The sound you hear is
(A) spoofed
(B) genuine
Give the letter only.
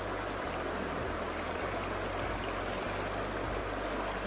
B